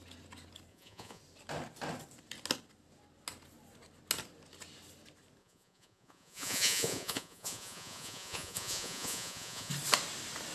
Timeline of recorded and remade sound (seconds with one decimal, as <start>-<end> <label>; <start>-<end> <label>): 0.0-0.7 recorded; 0.7-1.2 remade; 1.2-5.4 recorded; 5.4-9.7 remade; 9.7-10.5 recorded